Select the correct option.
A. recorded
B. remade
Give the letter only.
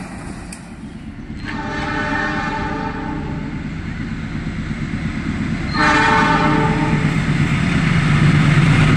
A